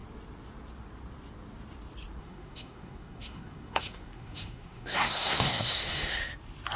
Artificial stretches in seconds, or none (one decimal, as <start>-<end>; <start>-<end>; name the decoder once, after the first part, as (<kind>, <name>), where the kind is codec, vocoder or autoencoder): 2.2-6.2 (codec, SNAC)